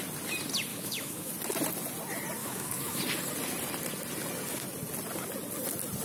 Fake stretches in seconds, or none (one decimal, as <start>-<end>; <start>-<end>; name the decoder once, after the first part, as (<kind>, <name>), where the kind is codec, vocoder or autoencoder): 0.7-1.3 (autoencoder, DAC-VAE); 2.4-3.0